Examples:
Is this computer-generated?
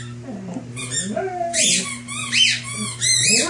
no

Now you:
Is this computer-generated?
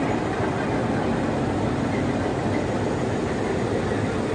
no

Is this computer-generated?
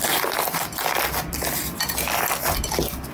no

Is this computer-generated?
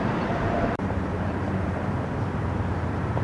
yes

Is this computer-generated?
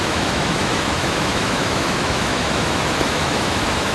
yes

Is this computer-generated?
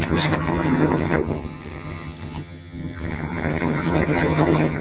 yes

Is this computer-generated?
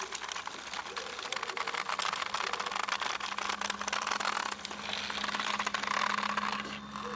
no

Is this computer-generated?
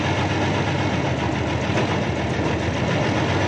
no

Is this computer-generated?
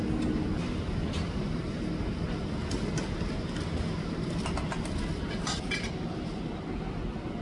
no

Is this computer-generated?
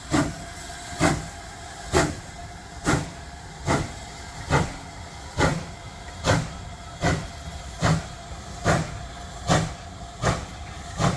no